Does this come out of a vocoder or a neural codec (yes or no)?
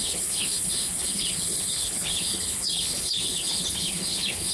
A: yes